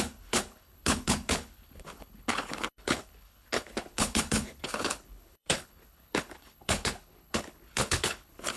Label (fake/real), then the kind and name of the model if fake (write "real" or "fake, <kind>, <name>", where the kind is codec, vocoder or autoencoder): fake, codec, HILCodec